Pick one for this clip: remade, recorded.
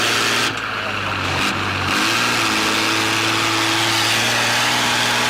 recorded